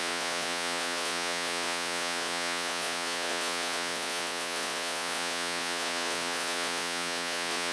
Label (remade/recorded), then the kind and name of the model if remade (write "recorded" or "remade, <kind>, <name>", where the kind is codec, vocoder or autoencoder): remade, vocoder, Vocos